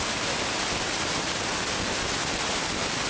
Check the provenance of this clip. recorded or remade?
recorded